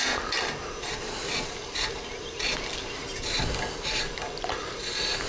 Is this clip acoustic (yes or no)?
yes